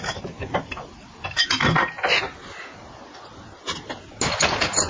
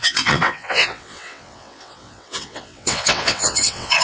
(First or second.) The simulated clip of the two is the second